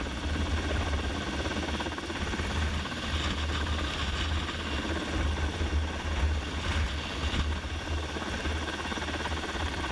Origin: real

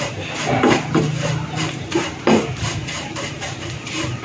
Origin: fake